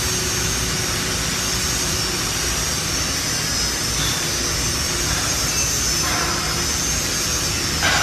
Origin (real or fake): real